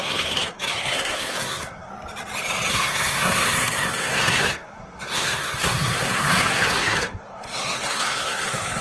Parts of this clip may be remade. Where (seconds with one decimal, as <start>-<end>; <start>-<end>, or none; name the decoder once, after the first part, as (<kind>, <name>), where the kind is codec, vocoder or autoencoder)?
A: 0.0-1.9 (codec, SNAC); 2.7-8.8